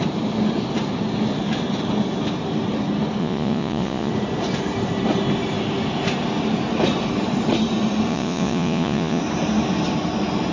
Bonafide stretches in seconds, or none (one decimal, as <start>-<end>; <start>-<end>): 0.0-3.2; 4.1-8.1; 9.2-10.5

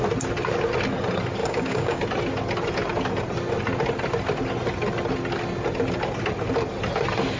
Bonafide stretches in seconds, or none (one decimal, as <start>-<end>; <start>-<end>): 0.0-1.4; 2.0-7.4

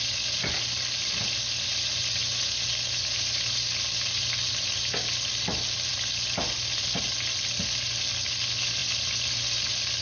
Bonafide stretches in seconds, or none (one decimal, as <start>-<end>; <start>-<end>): 0.0-10.0

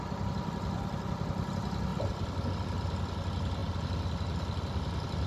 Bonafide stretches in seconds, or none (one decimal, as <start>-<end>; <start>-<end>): 0.0-5.3

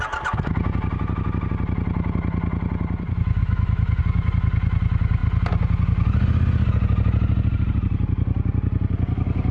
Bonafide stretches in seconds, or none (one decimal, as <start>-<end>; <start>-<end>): 0.0-3.4; 4.0-9.5

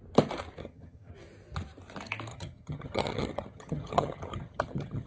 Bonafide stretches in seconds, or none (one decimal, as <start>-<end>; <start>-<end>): 0.0-0.6; 1.1-2.3